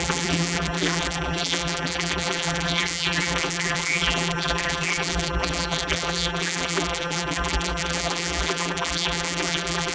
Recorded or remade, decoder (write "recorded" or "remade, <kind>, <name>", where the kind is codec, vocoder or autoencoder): remade, vocoder, BigVGAN v2